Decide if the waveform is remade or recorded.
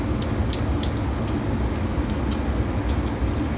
recorded